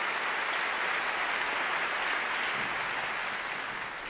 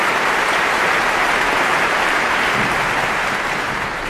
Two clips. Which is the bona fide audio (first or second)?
first